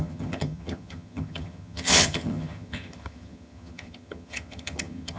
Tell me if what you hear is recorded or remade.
remade